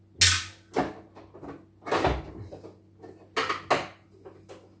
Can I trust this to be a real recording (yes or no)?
yes